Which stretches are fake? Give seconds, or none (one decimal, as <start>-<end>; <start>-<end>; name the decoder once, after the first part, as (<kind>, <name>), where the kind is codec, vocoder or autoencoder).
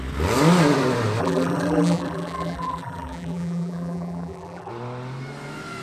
1.2-4.7 (vocoder, BigVGAN v2)